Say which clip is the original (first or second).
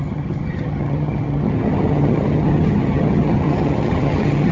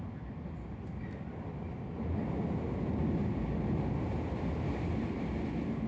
second